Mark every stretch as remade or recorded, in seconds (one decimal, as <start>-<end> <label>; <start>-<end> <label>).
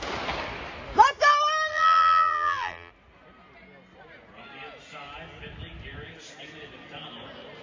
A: 0.0-1.7 recorded; 1.7-2.9 remade; 2.9-7.6 recorded